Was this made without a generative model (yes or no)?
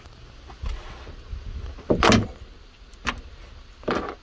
yes